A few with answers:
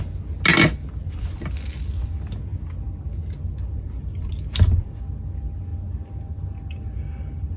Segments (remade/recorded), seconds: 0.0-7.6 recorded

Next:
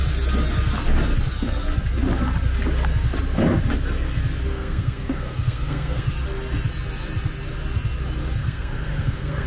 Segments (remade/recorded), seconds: 0.0-4.5 recorded; 4.5-6.1 remade; 6.1-8.4 recorded; 8.4-9.5 remade

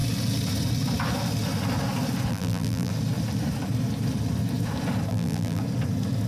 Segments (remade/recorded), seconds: 0.0-2.3 recorded; 2.3-2.9 remade; 2.9-5.1 recorded; 5.1-5.6 remade; 5.6-6.3 recorded

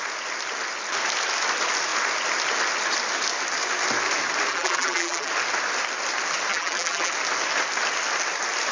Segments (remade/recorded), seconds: 0.0-4.5 recorded; 4.5-5.3 remade; 5.3-6.5 recorded; 6.5-7.1 remade; 7.1-8.7 recorded

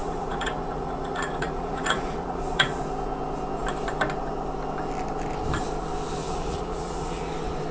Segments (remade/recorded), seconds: 0.0-2.8 remade; 2.8-6.2 recorded; 6.2-7.3 remade; 7.3-7.7 recorded

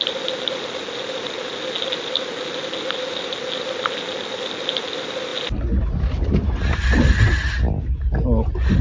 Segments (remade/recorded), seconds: 0.0-8.8 recorded